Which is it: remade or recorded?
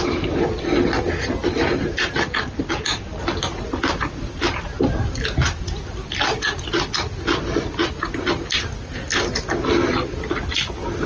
recorded